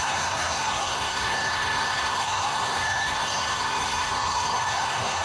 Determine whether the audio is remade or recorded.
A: remade